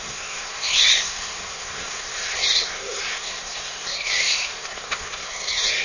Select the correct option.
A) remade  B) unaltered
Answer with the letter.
A